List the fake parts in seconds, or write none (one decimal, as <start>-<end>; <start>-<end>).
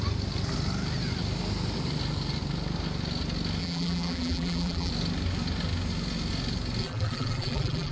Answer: 3.6-4.9; 6.8-7.9